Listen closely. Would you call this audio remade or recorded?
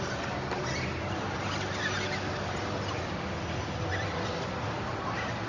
recorded